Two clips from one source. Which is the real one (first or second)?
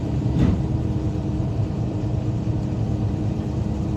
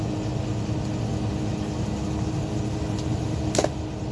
second